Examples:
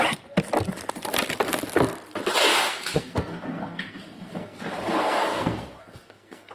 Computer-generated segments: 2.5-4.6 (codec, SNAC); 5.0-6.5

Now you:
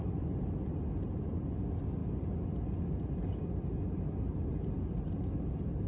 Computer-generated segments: none

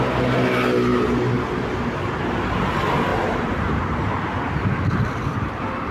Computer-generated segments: none

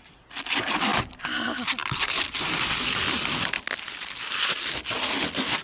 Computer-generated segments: none